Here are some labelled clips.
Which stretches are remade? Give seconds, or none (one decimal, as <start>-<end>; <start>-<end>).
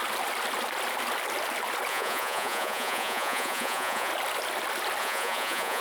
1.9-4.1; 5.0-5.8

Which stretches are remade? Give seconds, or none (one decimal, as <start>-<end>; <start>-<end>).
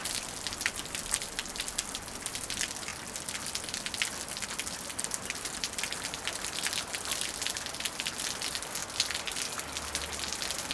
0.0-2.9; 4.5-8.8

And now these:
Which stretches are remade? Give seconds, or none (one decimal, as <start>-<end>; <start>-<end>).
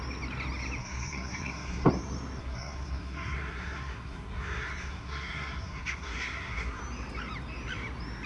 0.8-1.9; 2.4-6.8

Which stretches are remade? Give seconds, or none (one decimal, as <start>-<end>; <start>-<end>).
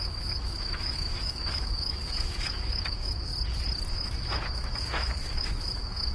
0.0-3.3; 3.9-6.1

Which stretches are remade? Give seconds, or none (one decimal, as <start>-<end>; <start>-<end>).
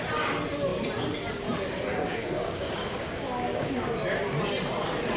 2.0-3.7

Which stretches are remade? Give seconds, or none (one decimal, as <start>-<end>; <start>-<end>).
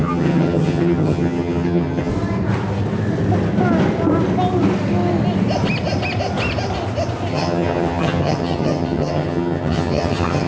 0.0-2.1; 7.3-10.5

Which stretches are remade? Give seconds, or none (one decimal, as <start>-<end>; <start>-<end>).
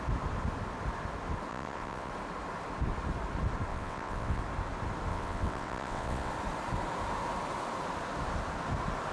1.5-2.1; 3.7-4.4; 5.1-6.3